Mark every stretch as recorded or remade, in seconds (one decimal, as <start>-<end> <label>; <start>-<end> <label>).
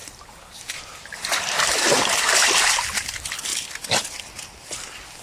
0.0-3.1 remade; 3.1-5.2 recorded